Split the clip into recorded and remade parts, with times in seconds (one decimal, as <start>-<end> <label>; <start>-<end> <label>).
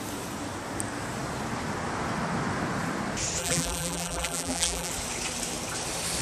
0.0-3.4 recorded; 3.4-4.9 remade; 4.9-6.2 recorded